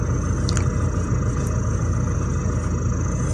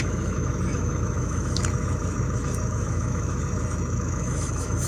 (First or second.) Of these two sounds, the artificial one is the second